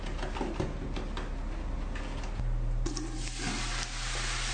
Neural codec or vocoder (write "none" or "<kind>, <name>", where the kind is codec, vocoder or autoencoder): none